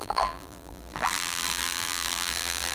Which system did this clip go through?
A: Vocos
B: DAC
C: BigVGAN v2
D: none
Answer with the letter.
C